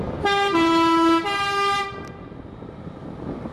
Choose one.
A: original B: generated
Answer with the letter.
A